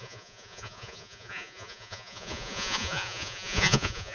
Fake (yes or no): yes